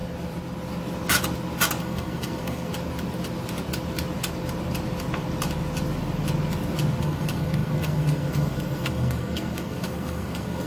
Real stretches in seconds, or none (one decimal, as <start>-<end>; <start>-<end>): 0.0-1.8; 2.7-7.0